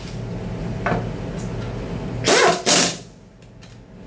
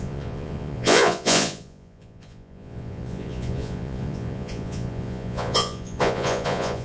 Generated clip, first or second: second